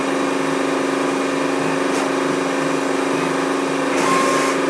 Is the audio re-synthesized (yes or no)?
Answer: no